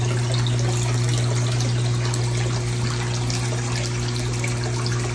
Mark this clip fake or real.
real